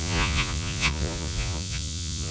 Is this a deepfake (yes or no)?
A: yes